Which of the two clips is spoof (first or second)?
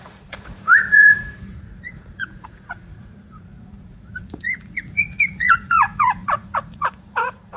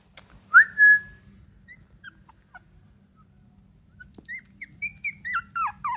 first